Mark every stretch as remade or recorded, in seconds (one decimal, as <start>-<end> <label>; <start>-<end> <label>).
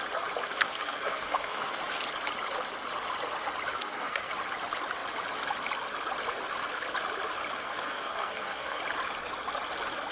0.0-0.4 recorded; 0.4-1.8 remade; 1.8-3.7 recorded; 3.7-4.3 remade; 4.3-7.6 recorded; 7.6-8.8 remade; 8.8-10.1 recorded